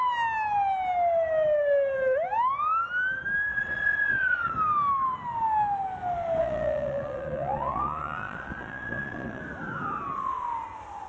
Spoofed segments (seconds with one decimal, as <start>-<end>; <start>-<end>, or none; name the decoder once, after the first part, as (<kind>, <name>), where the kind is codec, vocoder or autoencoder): 3.5-4.5 (vocoder, Vocos); 6.4-9.4